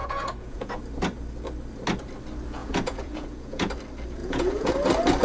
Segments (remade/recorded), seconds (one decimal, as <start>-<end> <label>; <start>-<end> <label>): 0.0-0.8 remade; 0.8-2.6 recorded; 2.6-3.7 remade; 3.7-4.2 recorded; 4.2-4.7 remade; 4.7-5.2 recorded

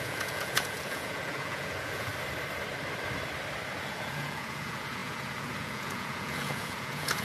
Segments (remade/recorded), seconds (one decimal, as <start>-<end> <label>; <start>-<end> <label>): 0.0-2.1 remade; 2.1-3.8 recorded; 3.8-7.2 remade

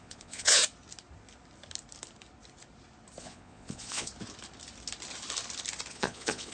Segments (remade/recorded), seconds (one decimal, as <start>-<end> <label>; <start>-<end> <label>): 0.0-0.6 remade; 0.6-3.2 recorded; 3.2-4.1 remade; 4.1-5.9 recorded; 5.9-6.5 remade

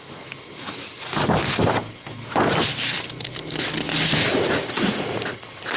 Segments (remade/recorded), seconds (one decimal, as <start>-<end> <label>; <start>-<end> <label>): 0.0-4.3 recorded; 4.3-5.2 remade; 5.2-5.8 recorded

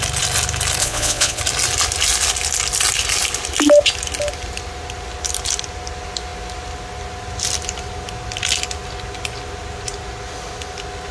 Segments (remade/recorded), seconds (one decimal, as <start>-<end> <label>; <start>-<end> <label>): 0.0-0.8 recorded; 0.8-1.4 remade; 1.4-11.1 recorded